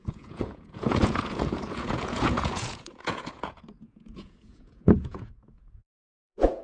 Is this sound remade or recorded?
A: remade